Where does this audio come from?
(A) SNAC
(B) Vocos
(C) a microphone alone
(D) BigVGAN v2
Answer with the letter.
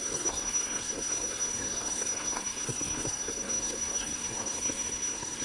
A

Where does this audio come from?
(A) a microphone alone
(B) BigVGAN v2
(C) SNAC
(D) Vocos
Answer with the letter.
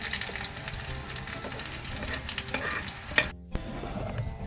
A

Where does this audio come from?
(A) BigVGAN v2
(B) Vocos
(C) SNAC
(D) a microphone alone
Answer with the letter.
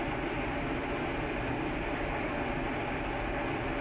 D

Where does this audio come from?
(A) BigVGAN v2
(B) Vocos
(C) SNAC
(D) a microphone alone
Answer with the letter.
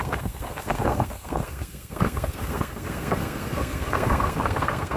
C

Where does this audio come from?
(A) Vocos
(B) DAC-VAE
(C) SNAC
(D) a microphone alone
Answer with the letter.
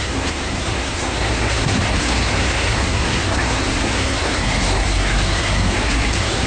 C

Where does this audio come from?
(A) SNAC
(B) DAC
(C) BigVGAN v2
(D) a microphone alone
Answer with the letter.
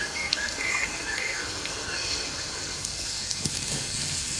A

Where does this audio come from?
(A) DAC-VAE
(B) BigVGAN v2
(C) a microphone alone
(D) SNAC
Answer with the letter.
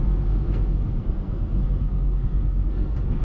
D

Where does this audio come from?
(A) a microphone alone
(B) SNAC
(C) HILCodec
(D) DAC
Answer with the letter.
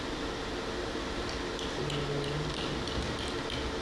A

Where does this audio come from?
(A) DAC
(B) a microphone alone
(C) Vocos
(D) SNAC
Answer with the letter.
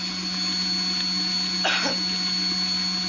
B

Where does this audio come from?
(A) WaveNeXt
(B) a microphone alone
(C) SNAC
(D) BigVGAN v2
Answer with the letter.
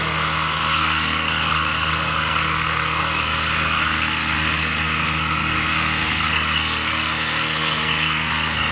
C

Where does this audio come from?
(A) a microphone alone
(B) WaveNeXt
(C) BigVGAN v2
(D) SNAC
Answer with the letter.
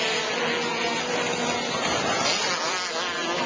A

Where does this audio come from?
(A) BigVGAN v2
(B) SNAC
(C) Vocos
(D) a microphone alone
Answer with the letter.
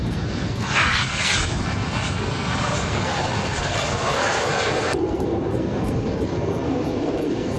B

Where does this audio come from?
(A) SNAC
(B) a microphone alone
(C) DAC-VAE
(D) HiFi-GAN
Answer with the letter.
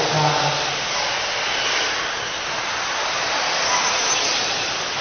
B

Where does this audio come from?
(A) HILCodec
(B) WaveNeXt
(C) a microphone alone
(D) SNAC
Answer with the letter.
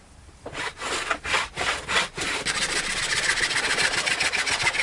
C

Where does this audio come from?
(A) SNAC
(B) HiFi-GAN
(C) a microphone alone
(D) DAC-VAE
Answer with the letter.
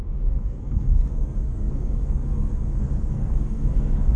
A